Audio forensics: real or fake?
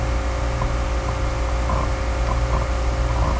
real